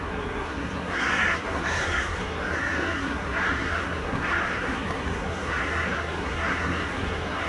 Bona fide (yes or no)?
no